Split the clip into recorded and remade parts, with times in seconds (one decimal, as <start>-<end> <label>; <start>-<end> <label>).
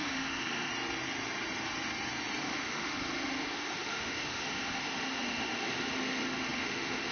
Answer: 0.0-0.7 remade; 0.7-2.4 recorded; 2.4-7.1 remade